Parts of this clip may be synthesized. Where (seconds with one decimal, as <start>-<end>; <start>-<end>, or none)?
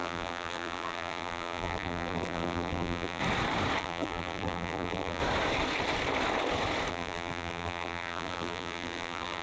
0.0-3.2; 3.8-5.2; 6.9-9.4